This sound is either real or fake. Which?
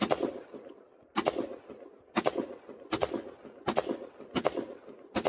real